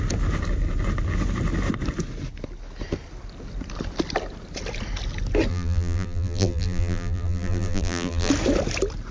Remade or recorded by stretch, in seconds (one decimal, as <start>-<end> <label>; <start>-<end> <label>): 0.0-5.5 recorded; 5.5-8.3 remade; 8.3-9.1 recorded